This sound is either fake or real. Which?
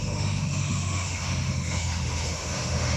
fake